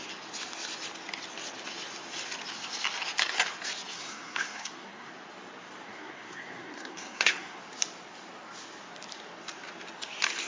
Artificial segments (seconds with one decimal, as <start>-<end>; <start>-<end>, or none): 3.9-5.1; 5.9-7.6